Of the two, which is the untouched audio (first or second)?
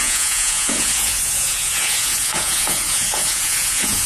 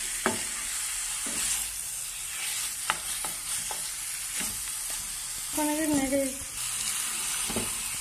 second